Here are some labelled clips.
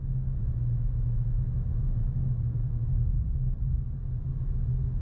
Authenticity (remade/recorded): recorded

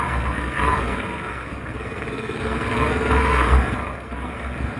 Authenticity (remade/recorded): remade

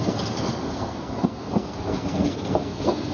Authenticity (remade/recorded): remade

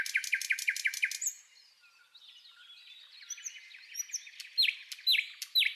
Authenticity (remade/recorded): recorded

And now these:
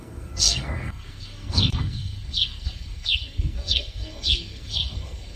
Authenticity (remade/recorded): remade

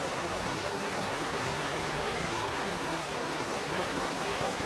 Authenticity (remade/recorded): remade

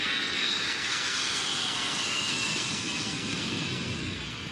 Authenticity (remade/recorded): remade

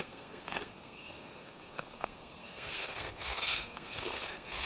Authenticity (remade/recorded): remade